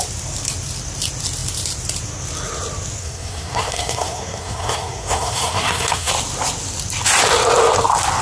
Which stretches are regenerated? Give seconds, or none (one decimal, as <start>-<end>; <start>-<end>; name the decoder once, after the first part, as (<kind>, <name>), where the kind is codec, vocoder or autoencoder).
3.0-6.1 (codec, SNAC)